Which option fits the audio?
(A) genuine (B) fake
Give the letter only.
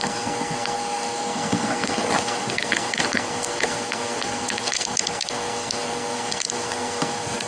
B